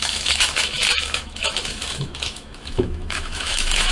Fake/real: fake